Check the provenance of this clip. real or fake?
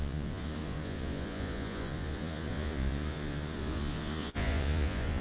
fake